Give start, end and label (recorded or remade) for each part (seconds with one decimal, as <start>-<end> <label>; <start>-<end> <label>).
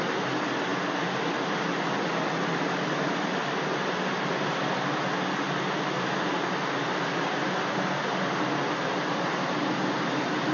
0.0-10.5 recorded